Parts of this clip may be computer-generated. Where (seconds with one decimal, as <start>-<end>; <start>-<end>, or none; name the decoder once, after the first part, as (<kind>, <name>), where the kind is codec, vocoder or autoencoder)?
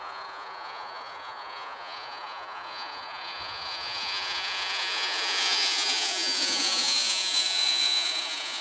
0.0-8.6 (vocoder, Vocos)